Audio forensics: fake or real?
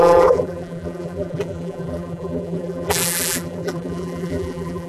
fake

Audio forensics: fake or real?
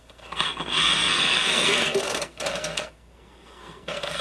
fake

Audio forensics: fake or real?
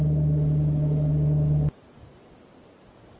real